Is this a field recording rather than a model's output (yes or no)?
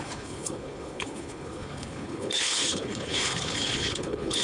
no